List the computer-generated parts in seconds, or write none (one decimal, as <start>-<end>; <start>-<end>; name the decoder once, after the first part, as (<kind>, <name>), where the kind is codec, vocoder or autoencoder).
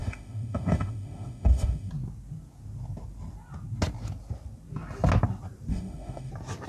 0.0-1.9 (autoencoder, DAC-VAE); 5.7-6.3